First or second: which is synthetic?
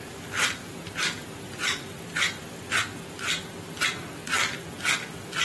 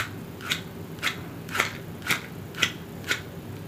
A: first